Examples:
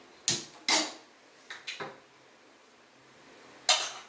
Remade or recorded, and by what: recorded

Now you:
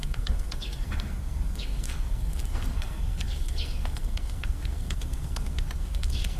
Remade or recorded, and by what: remade, codec, SNAC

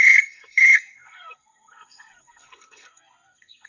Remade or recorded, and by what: remade, codec, SNAC